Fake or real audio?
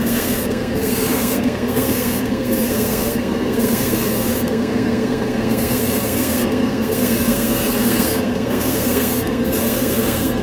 fake